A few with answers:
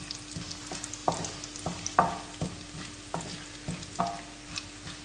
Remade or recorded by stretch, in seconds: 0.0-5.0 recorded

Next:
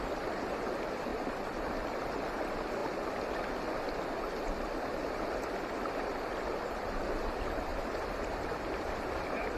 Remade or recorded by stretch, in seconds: 0.0-1.1 recorded; 1.1-1.7 remade; 1.7-7.7 recorded; 7.7-9.0 remade; 9.0-9.6 recorded

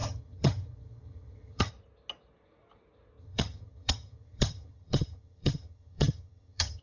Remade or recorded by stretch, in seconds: 0.0-1.7 remade; 1.7-3.2 recorded; 3.2-6.8 remade